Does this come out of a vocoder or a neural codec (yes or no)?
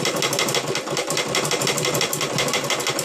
no